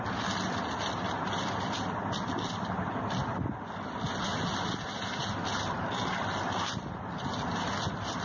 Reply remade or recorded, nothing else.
recorded